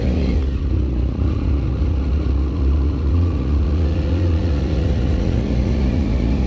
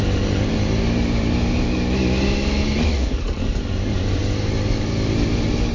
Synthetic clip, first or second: first